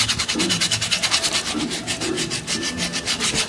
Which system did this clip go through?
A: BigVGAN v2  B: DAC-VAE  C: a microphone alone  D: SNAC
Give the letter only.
C